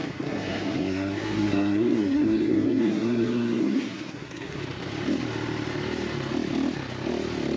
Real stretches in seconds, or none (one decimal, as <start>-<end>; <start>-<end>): 4.6-7.6